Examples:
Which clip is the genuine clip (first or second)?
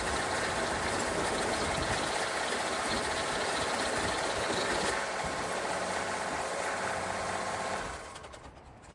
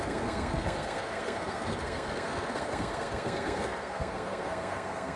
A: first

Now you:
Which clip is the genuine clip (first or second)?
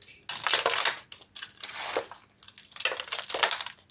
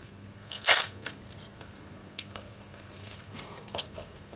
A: first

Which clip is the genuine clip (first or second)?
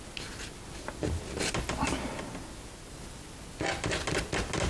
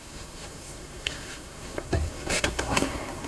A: first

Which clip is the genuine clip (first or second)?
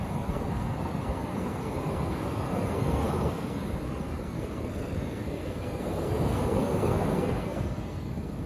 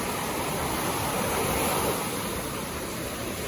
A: second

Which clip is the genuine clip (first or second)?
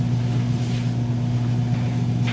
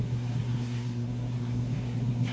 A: first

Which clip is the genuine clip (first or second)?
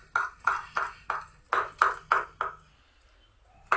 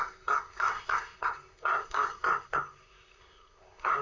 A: first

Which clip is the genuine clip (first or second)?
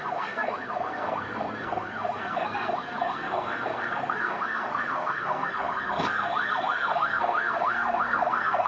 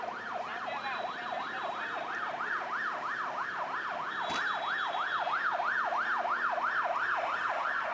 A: second